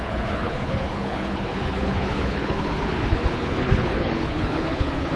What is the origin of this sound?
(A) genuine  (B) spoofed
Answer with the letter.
B